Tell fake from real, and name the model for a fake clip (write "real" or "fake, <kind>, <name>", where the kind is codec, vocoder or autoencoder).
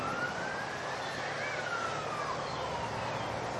real